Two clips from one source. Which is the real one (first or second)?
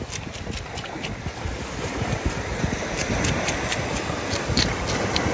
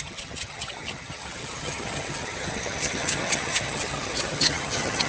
first